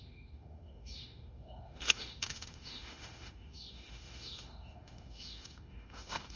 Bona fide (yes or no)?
no